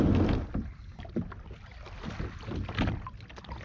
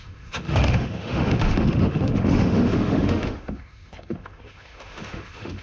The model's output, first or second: second